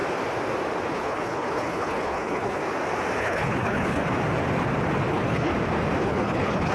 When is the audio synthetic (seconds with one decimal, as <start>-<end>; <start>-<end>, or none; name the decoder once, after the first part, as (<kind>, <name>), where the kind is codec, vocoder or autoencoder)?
0.9-2.6 (codec, HILCodec); 3.2-4.0; 5.1-5.5; 6.0-6.7